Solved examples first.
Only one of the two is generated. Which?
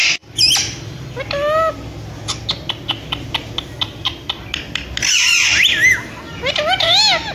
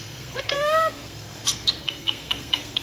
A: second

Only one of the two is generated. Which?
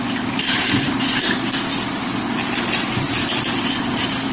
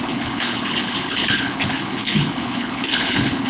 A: second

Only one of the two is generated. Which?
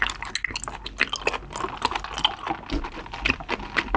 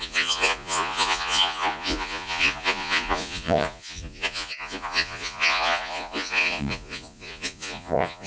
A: second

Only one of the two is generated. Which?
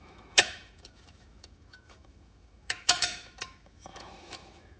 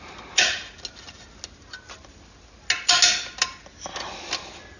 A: first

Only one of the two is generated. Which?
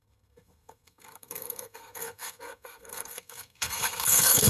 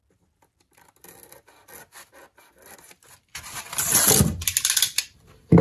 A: first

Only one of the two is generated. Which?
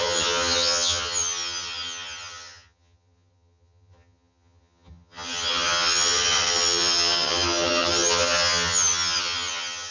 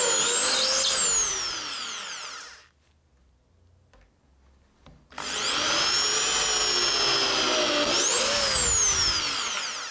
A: first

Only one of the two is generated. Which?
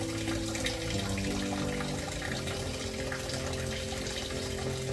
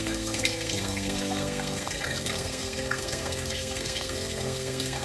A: second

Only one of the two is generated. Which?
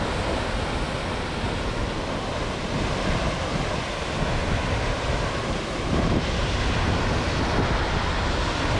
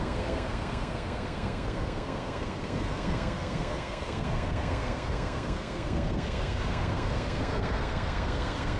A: second